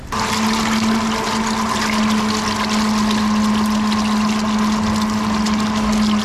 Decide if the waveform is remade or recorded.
recorded